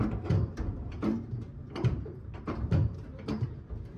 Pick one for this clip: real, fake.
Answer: fake